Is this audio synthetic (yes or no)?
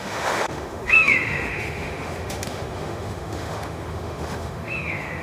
yes